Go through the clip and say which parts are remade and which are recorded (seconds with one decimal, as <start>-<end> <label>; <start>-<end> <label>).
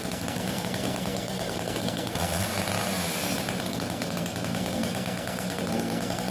0.0-2.5 remade; 2.5-3.6 recorded; 3.6-6.3 remade